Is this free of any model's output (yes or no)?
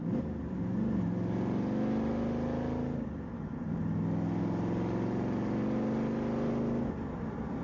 yes